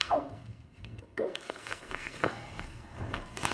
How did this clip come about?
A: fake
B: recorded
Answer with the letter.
A